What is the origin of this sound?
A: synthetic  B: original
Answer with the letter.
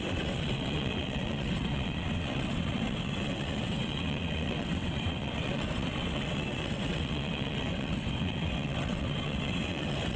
A